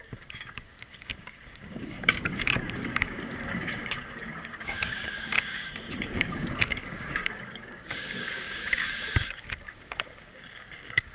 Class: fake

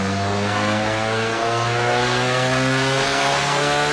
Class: fake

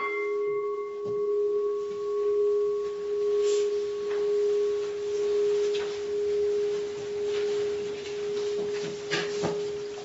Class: real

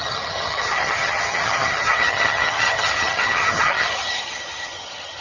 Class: fake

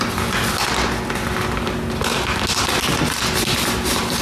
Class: real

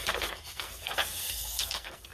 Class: fake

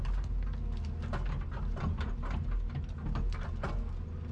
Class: real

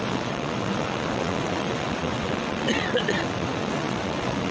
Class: fake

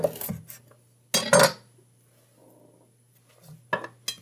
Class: real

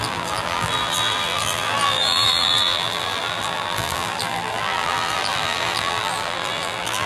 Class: fake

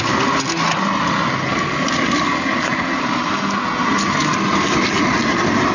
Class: real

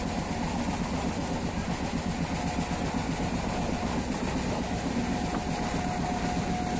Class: real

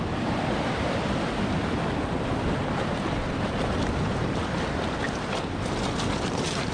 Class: fake